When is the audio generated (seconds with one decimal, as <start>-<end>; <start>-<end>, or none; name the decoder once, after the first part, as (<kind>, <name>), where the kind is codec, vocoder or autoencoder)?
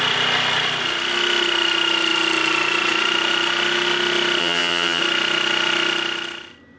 4.4-5.0 (vocoder, HiFi-GAN)